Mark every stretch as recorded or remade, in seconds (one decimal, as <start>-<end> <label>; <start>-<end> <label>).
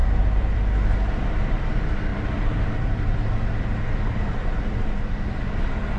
0.0-1.7 remade; 1.7-2.1 recorded; 2.1-3.0 remade; 3.0-6.0 recorded